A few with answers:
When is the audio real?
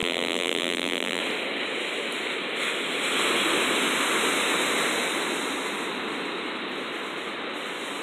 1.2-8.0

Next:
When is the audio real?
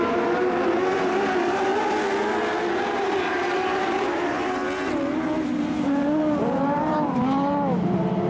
1.7-2.7; 4.6-5.6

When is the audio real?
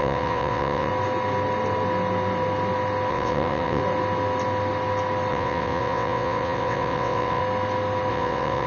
0.9-3.1; 3.8-5.3; 7.4-8.1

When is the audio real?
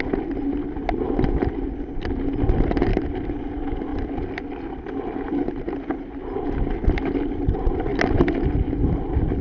0.0-9.4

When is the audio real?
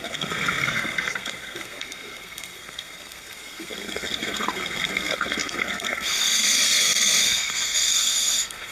none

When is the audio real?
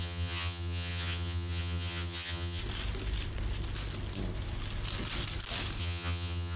2.6-5.8